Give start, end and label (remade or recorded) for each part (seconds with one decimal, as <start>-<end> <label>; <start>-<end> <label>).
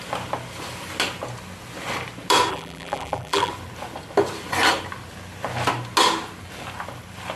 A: 0.0-2.5 recorded; 2.5-3.5 remade; 3.5-7.4 recorded